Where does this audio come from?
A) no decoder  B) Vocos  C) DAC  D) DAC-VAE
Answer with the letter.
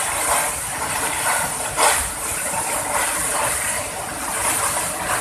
A